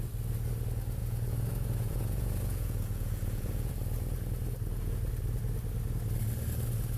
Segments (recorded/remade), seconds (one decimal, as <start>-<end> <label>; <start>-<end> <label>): 0.0-1.0 recorded; 1.0-3.7 remade; 3.7-7.0 recorded